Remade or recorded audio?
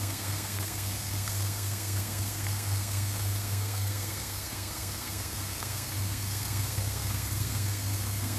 remade